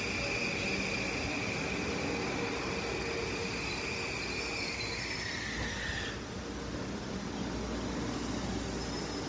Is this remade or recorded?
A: recorded